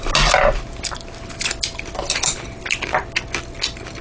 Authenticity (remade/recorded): recorded